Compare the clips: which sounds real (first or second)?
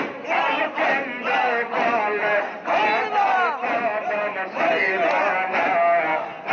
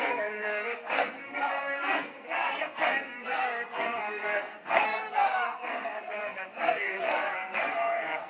first